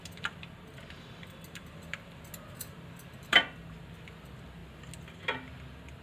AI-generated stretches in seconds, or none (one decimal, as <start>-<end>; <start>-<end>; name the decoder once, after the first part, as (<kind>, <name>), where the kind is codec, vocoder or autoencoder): none